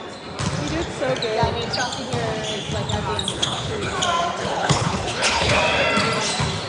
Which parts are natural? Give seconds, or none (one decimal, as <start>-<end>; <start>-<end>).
0.0-3.3; 3.9-4.4; 5.6-6.7